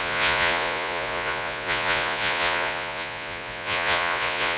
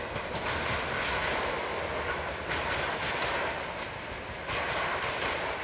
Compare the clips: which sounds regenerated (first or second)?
first